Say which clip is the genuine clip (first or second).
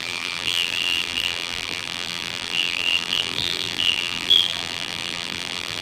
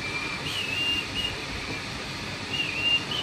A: second